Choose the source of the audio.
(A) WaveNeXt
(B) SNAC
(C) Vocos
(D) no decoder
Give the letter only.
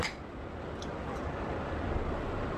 D